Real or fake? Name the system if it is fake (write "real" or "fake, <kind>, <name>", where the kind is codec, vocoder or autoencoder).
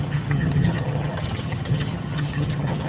fake, vocoder, HiFi-GAN